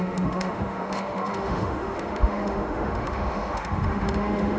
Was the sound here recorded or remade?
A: remade